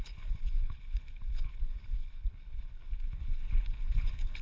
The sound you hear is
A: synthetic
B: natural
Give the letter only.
A